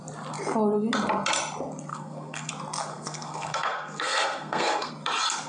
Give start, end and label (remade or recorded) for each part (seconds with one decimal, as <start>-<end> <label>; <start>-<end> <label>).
0.0-1.9 recorded; 1.9-2.5 remade; 2.5-2.9 recorded; 2.9-4.9 remade; 4.9-5.5 recorded